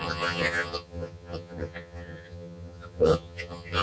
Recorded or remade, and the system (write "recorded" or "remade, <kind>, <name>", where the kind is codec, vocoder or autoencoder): remade, vocoder, HiFi-GAN